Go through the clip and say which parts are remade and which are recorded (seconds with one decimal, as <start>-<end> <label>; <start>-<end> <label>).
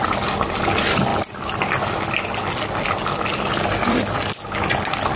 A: 0.0-5.2 recorded